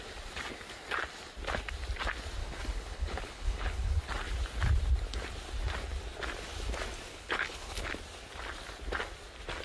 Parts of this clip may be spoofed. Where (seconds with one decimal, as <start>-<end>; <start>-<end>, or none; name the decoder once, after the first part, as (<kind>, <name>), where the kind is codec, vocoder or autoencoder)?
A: 2.4-4.0 (codec, HILCodec); 7.1-7.9

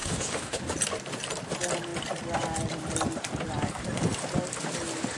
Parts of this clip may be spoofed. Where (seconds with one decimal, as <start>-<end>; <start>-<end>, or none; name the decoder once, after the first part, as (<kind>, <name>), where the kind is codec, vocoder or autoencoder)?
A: 0.0-0.6 (autoencoder, DAC-VAE)

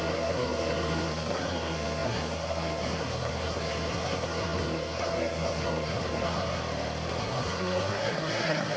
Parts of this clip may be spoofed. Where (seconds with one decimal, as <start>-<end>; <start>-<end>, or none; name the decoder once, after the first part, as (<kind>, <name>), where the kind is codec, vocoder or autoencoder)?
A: 0.0-6.6 (codec, SNAC); 7.2-8.8

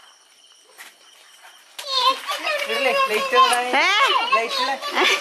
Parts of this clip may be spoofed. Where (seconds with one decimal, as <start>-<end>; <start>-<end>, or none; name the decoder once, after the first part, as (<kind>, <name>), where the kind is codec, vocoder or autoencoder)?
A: none

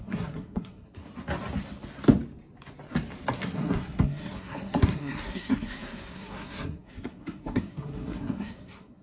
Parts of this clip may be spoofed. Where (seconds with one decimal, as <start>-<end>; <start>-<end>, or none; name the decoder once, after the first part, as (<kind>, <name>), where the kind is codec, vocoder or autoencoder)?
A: 0.0-1.1 (codec, SNAC); 3.4-9.0

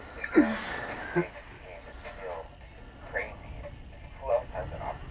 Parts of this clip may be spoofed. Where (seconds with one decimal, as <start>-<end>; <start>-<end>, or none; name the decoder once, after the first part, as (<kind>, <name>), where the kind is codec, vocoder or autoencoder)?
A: none